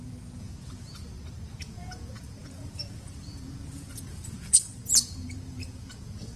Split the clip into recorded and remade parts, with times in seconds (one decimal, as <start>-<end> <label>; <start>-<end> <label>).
0.0-1.0 remade; 1.0-1.6 recorded; 1.6-6.4 remade